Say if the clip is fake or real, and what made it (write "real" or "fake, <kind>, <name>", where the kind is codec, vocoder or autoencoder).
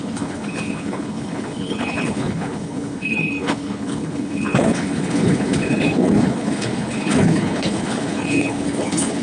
fake, codec, HILCodec